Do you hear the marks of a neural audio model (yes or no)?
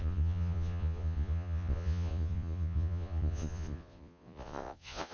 yes